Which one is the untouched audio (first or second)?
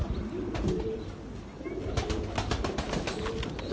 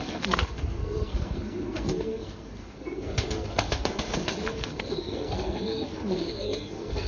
first